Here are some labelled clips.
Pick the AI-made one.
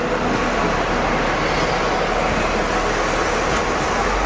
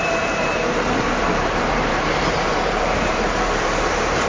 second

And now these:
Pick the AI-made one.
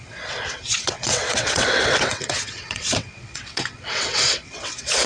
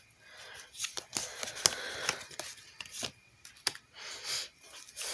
first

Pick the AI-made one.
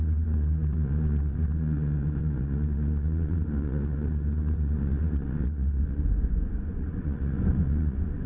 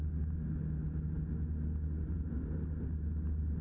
first